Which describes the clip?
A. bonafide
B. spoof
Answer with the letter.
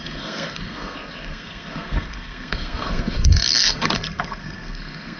B